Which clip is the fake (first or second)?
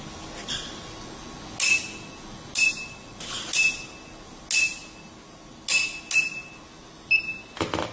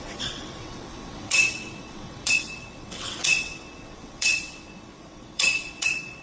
second